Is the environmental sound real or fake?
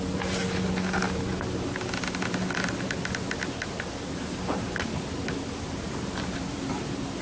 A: real